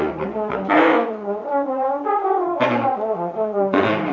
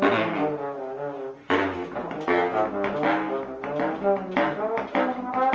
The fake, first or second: first